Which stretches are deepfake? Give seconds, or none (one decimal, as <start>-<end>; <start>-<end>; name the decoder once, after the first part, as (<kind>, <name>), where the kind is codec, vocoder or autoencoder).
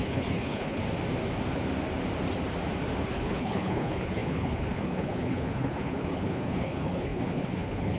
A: 0.0-0.8 (codec, HILCodec); 3.1-8.0